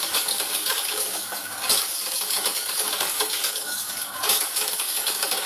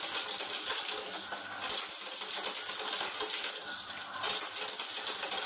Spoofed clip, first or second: first